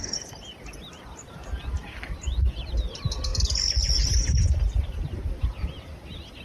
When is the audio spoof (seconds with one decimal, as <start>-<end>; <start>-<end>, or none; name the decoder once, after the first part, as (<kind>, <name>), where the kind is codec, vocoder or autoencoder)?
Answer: none